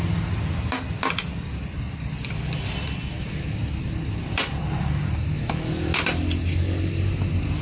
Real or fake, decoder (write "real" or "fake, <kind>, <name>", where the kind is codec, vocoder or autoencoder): real